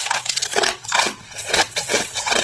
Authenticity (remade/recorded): remade